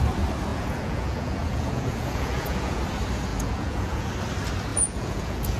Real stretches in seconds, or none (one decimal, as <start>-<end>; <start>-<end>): 0.0-0.5; 2.8-3.3; 4.1-4.7